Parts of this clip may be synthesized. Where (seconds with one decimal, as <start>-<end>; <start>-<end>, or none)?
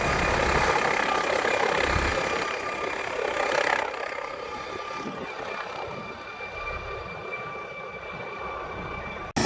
none